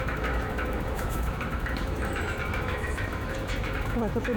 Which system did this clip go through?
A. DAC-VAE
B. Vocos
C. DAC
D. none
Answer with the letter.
A